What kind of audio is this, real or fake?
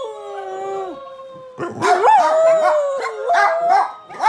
real